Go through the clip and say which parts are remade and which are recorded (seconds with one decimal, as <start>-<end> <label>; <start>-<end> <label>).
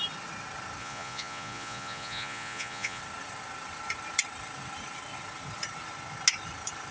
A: 0.0-0.8 recorded; 0.8-3.0 remade; 3.0-6.9 recorded